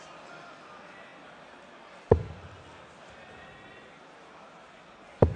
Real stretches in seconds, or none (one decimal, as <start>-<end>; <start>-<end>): 0.0-5.4